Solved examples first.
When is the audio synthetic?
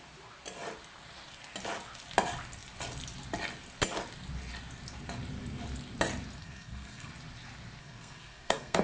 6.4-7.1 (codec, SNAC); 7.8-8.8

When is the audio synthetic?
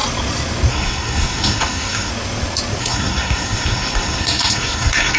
0.7-2.1 (codec, SNAC); 2.8-5.2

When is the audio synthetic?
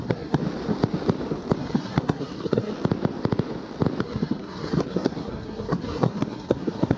0.0-0.4 (codec, SNAC); 1.6-2.7; 4.0-7.0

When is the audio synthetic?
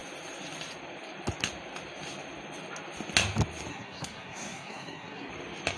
3.7-5.3 (codec, SNAC)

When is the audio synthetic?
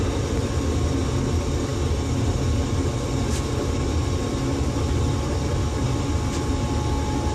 none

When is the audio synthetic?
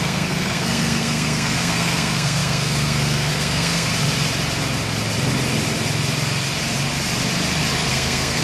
0.0-3.9 (codec, SNAC); 7.9-8.4